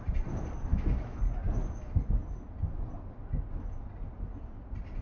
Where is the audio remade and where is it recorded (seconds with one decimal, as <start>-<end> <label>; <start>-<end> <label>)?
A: 0.0-0.7 recorded; 0.7-1.2 remade; 1.2-5.0 recorded